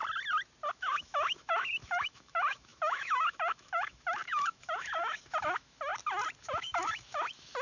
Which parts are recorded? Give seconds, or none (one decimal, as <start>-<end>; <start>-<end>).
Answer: 0.0-0.7; 5.9-6.4